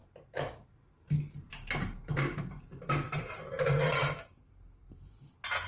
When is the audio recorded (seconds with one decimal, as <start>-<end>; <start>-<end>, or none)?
1.5-1.9; 5.3-5.7